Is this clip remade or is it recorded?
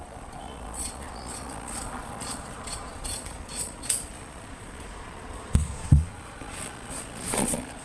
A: remade